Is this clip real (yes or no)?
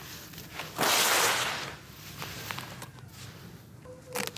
yes